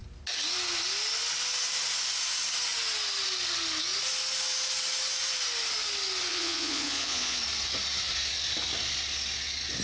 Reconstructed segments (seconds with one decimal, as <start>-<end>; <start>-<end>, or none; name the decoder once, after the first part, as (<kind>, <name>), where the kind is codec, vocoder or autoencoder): 6.3-7.4 (vocoder, Vocos)